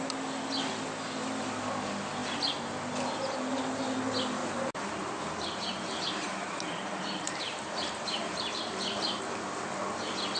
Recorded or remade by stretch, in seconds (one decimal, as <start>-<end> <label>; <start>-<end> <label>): 0.0-4.4 recorded; 4.4-9.2 remade; 9.2-10.4 recorded

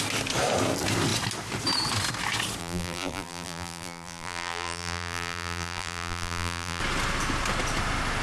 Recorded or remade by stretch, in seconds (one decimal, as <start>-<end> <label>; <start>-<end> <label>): 0.0-2.6 recorded; 2.6-6.8 remade; 6.8-8.2 recorded

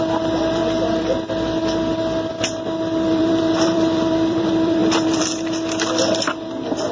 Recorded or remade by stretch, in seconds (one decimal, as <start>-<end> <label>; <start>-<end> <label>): 0.0-0.6 remade; 0.6-2.3 recorded; 2.3-6.9 remade

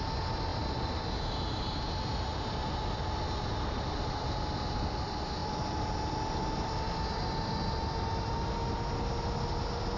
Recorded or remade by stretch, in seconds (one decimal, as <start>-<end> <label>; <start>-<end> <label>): 0.0-10.0 recorded

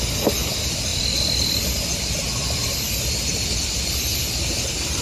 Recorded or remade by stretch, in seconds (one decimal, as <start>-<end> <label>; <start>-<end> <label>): 0.0-0.9 recorded; 0.9-3.9 remade; 3.9-5.0 recorded

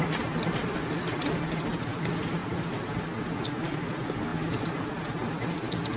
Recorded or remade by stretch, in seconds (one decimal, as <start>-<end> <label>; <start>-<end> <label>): 0.0-0.7 remade; 0.7-6.0 recorded

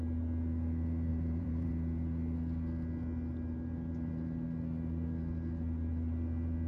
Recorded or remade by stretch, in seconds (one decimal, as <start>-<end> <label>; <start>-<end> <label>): 0.0-1.1 recorded; 1.1-1.7 remade; 1.7-6.7 recorded